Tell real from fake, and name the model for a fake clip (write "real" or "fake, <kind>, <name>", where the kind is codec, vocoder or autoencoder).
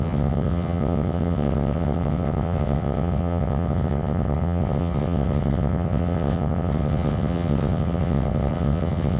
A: fake, vocoder, WaveNeXt